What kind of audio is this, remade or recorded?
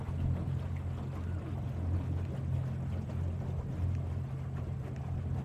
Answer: recorded